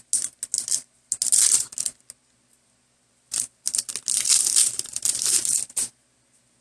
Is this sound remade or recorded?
recorded